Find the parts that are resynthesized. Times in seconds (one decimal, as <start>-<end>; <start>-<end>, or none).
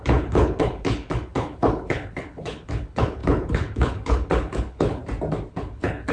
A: 0.0-5.0; 5.5-6.1